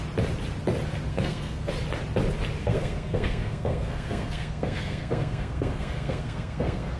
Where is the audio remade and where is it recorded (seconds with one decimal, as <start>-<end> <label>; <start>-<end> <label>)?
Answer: 0.0-1.1 recorded; 1.1-1.7 remade; 1.7-2.6 recorded; 2.6-7.0 remade